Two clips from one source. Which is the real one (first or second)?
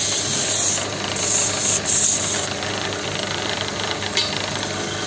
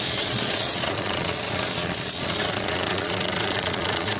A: first